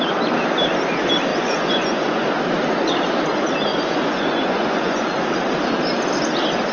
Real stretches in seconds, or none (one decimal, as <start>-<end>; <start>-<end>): 0.0-1.3; 2.3-3.7; 5.2-6.7